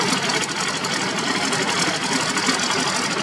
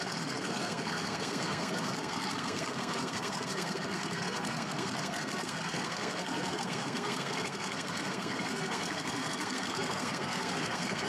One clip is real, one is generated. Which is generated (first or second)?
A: second